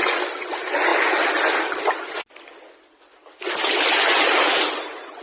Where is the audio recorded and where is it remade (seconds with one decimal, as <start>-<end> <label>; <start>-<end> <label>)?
0.0-5.2 recorded